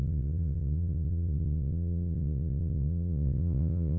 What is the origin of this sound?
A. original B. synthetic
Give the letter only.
B